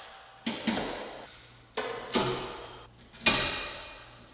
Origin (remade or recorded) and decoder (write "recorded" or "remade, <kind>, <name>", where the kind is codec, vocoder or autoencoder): recorded